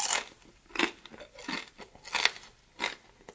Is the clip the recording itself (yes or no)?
yes